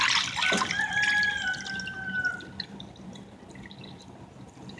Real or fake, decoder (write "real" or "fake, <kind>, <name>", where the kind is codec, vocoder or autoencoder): real